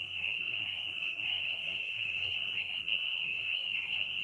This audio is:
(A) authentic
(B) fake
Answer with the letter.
B